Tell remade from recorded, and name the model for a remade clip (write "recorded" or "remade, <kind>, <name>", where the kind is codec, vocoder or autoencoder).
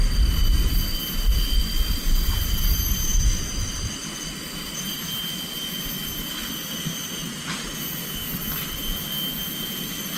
recorded